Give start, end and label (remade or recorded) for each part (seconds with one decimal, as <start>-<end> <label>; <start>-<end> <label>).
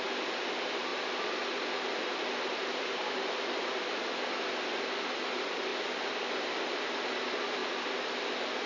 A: 0.0-8.7 recorded